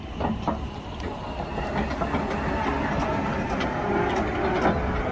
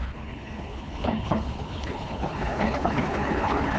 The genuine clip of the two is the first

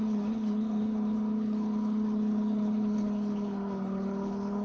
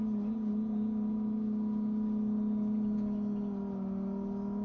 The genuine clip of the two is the second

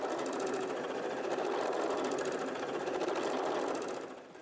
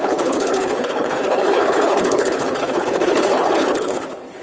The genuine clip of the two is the first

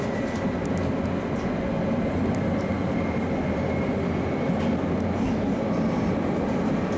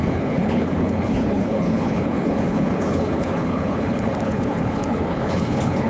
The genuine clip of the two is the first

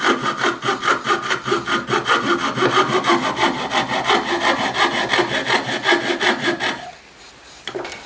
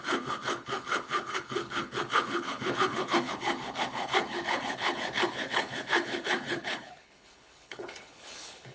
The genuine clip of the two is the first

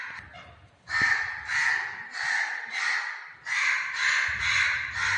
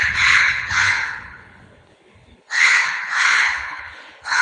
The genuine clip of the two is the first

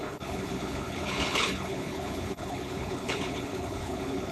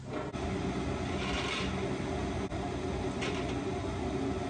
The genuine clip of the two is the second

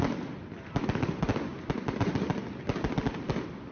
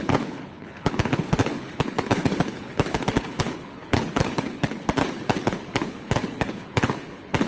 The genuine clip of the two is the first